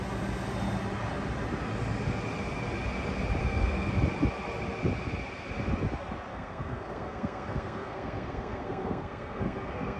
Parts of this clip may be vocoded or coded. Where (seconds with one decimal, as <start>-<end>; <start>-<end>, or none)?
3.4-3.9; 6.3-10.0